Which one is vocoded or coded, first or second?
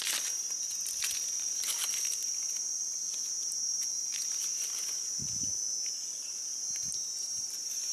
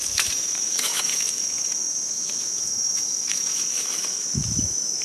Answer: second